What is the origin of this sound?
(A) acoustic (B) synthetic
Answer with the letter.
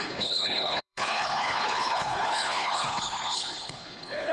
B